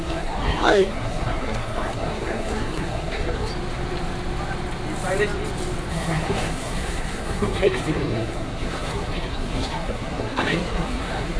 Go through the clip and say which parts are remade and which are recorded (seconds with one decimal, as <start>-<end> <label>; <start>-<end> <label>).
0.0-3.5 remade; 3.5-5.9 recorded; 5.9-11.4 remade